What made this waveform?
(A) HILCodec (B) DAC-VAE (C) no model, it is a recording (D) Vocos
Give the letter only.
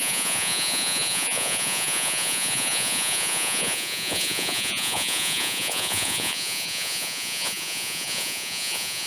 D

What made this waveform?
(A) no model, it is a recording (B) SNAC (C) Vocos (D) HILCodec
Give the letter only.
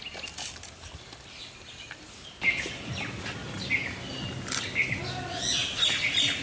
A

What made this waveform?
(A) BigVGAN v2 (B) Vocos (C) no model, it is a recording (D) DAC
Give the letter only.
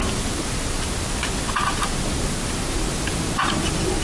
C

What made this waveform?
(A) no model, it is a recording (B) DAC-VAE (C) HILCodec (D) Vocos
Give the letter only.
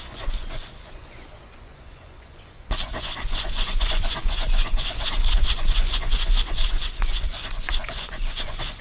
D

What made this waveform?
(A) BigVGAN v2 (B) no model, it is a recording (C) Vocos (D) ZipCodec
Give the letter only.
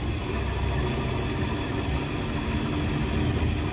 B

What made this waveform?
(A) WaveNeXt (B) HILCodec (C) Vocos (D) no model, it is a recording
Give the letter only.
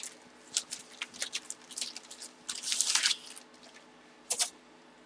D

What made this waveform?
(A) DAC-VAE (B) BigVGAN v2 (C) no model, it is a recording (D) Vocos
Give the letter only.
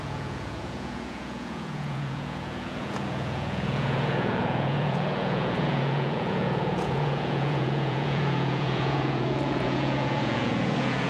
D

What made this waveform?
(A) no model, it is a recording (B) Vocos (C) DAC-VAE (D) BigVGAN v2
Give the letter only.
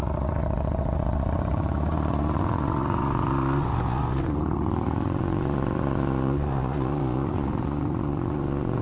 B